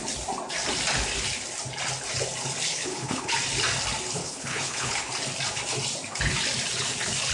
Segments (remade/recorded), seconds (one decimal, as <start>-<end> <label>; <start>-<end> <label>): 0.0-2.7 recorded; 2.7-3.3 remade; 3.3-4.2 recorded; 4.2-5.1 remade; 5.1-7.3 recorded